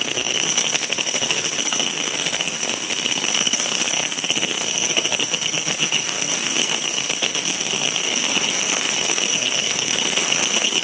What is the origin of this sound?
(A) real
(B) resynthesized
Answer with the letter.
B